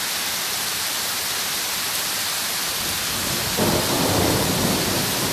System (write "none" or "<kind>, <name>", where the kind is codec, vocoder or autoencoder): vocoder, BigVGAN v2